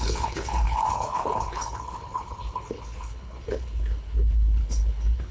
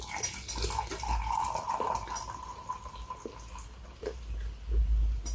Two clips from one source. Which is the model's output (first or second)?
first